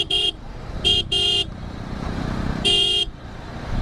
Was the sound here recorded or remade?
remade